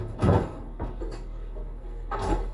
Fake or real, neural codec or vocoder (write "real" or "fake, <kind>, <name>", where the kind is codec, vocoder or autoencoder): fake, codec, SNAC